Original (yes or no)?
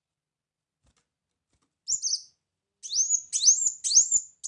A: yes